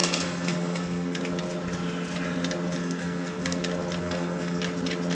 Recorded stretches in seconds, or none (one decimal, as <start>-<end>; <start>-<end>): 1.2-2.8; 3.6-4.0; 4.6-5.1